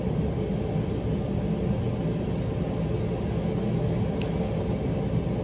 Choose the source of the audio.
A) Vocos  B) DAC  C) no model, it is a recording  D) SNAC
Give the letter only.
C